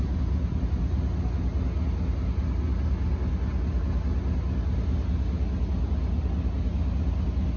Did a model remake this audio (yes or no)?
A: no